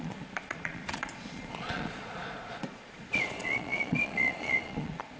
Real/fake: fake